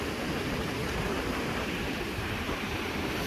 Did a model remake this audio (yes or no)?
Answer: no